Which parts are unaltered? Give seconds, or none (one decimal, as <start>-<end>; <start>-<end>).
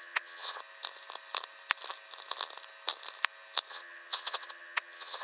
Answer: 0.6-3.7